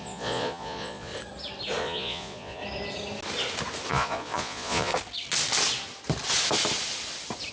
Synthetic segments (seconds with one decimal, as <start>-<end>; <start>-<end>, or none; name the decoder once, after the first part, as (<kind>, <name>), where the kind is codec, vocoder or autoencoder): 0.0-1.1 (vocoder, Vocos); 1.8-2.6; 3.9-4.9